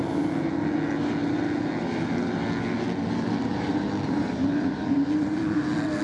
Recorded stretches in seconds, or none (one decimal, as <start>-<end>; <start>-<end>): 0.0-3.5; 5.6-6.0